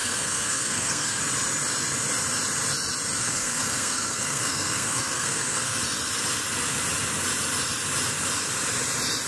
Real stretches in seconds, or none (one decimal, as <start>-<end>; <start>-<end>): 1.2-3.2; 5.8-9.3